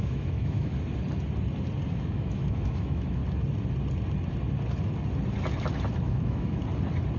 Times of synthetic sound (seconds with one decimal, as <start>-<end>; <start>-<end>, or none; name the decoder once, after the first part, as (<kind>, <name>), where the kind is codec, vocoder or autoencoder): 0.0-0.7 (autoencoder, DAC-VAE); 1.9-3.2; 6.0-6.6